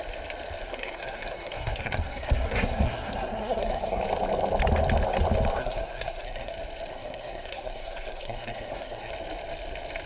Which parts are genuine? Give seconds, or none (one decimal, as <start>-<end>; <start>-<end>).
0.0-0.6; 4.0-5.6; 6.5-6.9; 9.1-10.1